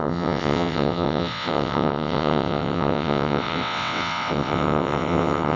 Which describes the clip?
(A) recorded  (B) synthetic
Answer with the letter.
B